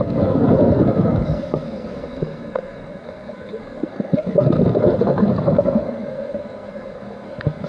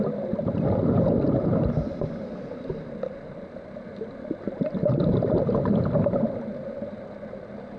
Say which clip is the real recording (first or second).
second